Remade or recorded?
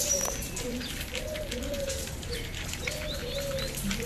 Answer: remade